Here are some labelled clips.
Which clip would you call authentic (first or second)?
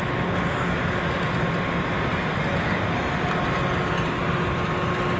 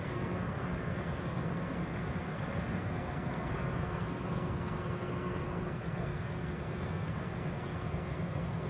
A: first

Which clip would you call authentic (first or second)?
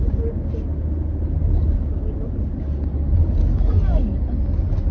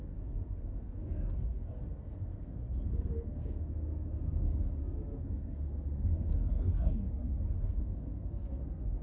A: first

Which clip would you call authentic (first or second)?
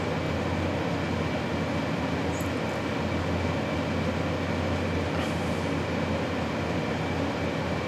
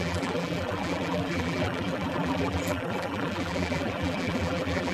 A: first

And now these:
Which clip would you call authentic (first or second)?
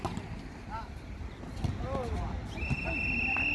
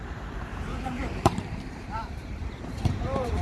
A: first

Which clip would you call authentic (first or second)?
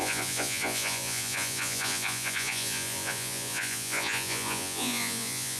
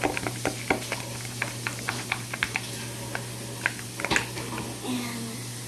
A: second